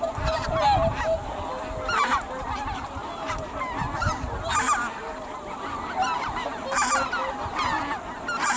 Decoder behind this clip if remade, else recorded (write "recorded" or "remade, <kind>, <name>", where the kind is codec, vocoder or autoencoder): recorded